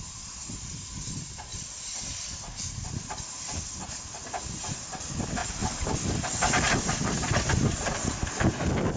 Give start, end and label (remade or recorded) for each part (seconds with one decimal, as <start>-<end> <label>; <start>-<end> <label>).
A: 0.0-9.0 recorded